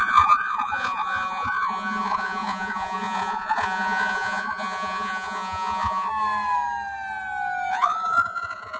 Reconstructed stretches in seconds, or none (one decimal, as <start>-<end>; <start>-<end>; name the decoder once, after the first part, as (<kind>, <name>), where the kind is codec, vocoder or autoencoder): 0.0-6.1 (vocoder, Vocos); 7.7-8.8